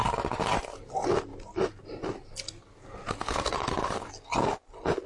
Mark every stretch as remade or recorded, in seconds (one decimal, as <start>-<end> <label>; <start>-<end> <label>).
0.0-5.1 recorded